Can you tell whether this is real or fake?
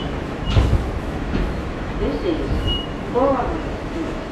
fake